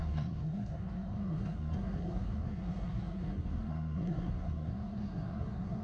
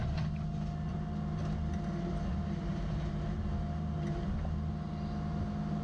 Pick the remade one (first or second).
first